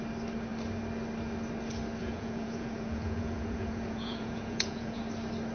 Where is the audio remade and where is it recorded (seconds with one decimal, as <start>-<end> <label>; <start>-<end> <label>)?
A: 0.0-2.0 recorded; 2.0-5.0 remade; 5.0-5.5 recorded